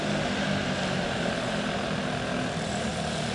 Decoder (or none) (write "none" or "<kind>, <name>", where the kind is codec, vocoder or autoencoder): none